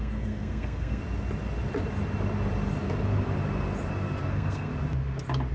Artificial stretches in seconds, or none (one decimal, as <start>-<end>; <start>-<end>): 0.0-1.0; 4.3-4.7